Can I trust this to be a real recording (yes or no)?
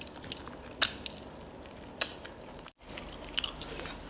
yes